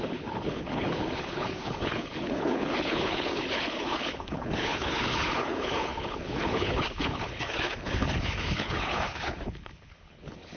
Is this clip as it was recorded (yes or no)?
no